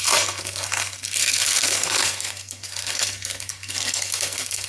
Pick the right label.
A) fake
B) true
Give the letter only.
A